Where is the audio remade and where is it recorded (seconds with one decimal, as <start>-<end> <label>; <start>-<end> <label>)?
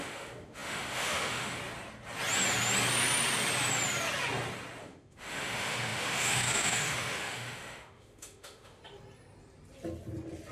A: 0.0-1.6 remade; 1.6-4.8 recorded; 4.8-8.8 remade; 8.8-10.5 recorded